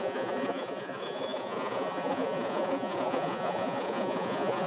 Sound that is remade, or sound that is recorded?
remade